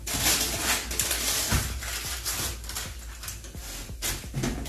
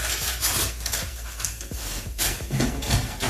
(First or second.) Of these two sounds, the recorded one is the first